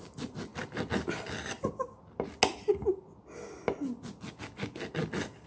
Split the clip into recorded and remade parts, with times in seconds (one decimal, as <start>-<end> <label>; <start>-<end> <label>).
0.0-5.5 recorded